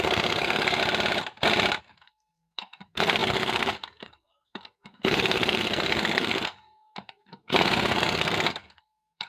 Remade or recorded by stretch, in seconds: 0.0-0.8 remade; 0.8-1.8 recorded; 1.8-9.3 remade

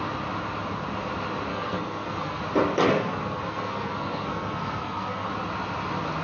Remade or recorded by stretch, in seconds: 0.0-1.5 recorded; 1.5-2.4 remade; 2.4-2.9 recorded; 2.9-5.3 remade; 5.3-6.2 recorded

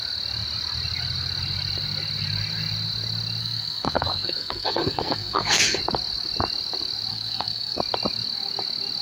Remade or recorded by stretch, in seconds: 0.0-3.4 recorded; 3.4-5.8 remade; 5.8-7.1 recorded; 7.1-7.8 remade; 7.8-9.0 recorded

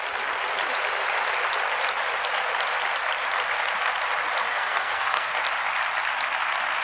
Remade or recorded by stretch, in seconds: 0.0-4.5 recorded; 4.5-5.3 remade; 5.3-6.8 recorded

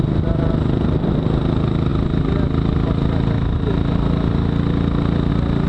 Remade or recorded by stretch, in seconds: 0.0-5.7 recorded

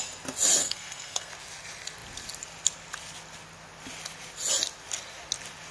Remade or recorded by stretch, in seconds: 0.0-0.6 recorded; 0.6-1.3 remade; 1.3-5.7 recorded

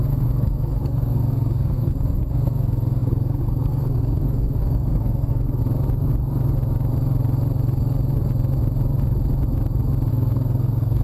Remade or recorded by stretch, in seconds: 0.0-5.6 remade; 5.6-10.1 recorded; 10.1-11.0 remade